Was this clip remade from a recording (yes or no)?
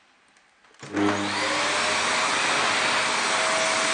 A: no